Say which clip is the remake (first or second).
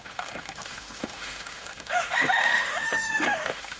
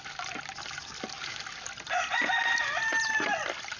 first